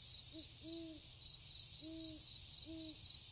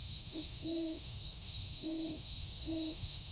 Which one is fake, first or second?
second